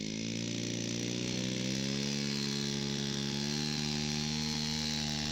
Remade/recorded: recorded